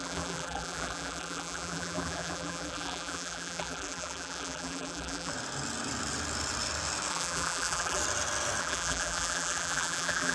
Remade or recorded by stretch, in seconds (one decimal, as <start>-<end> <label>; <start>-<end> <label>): 0.0-5.3 remade; 5.3-7.1 recorded; 7.1-8.0 remade; 8.0-8.6 recorded; 8.6-10.3 remade